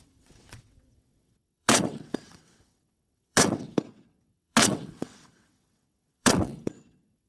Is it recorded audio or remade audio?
remade